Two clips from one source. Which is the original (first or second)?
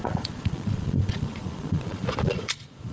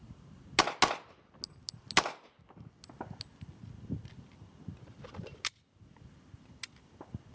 second